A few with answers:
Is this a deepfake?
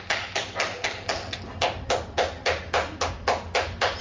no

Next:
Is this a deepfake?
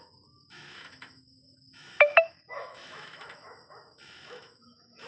yes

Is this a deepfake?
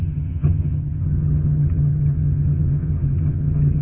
yes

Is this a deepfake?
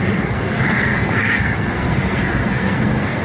yes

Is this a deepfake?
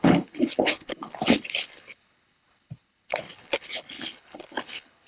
yes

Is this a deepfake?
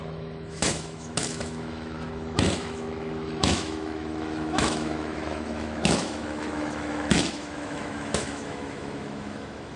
yes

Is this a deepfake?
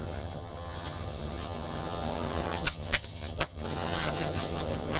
yes